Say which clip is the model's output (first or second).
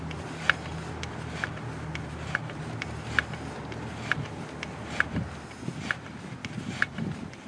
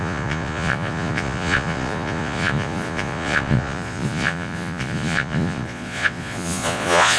second